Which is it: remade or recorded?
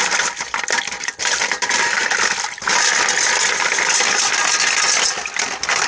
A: recorded